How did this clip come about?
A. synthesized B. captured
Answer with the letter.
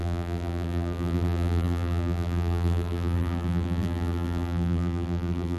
A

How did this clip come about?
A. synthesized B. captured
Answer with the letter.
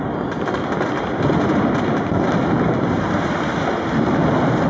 A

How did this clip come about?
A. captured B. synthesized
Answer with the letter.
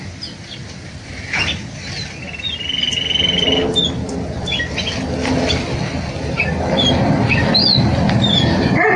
A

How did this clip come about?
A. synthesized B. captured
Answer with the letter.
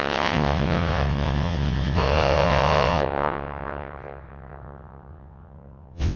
A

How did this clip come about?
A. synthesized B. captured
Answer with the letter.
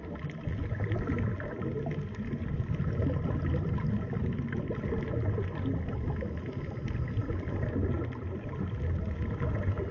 B